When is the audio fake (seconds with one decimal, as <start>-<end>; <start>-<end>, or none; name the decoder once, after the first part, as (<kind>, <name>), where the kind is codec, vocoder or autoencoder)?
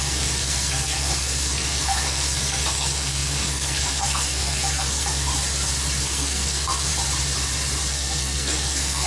0.0-5.3 (codec, SNAC); 6.0-6.9; 7.9-9.1